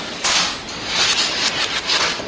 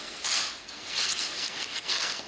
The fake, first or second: second